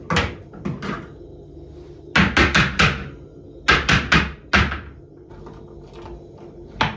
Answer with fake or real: real